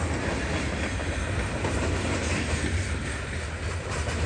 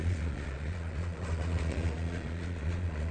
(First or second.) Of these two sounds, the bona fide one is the first